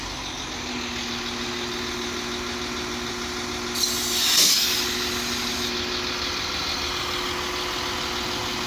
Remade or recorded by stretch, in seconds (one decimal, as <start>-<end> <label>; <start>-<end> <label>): 0.0-8.7 recorded